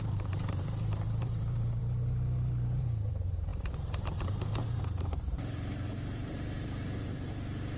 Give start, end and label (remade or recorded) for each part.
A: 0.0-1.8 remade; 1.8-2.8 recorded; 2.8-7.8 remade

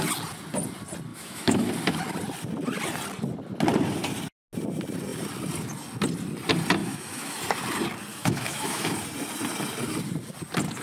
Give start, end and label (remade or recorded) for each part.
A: 0.0-1.1 recorded; 1.1-1.7 remade; 1.7-6.8 recorded; 6.8-7.4 remade; 7.4-8.1 recorded; 8.1-8.9 remade; 8.9-10.8 recorded

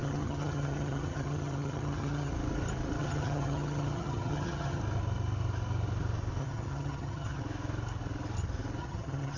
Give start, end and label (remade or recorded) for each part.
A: 0.0-2.3 remade; 2.3-3.0 recorded; 3.0-4.8 remade; 4.8-6.4 recorded; 6.4-7.4 remade; 7.4-8.8 recorded; 8.8-9.4 remade

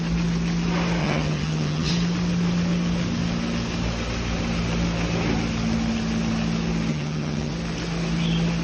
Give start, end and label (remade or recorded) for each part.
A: 0.0-1.0 recorded; 1.0-1.9 remade; 1.9-6.9 recorded; 6.9-7.5 remade; 7.5-8.6 recorded

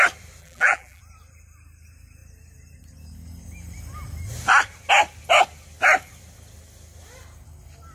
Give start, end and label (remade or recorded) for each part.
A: 0.0-0.4 recorded; 0.4-1.0 remade; 1.0-7.9 recorded

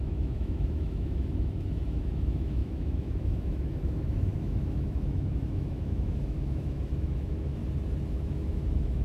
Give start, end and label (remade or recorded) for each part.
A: 0.0-7.6 remade; 7.6-8.1 recorded; 8.1-9.0 remade

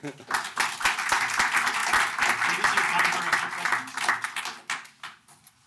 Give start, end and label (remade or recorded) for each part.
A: 0.0-5.7 recorded

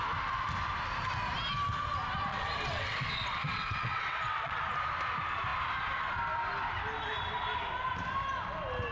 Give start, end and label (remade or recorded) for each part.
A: 0.0-2.3 recorded; 2.3-4.6 remade; 4.6-8.9 recorded